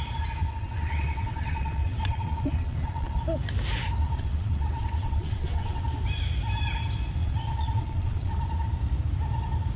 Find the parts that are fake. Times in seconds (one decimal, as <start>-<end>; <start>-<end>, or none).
0.4-3.2; 4.0-5.8; 7.2-8.3